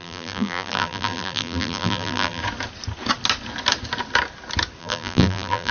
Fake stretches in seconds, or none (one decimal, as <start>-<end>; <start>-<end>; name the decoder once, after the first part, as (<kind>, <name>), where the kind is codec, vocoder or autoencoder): 0.0-2.4 (vocoder, BigVGAN v2); 4.8-5.7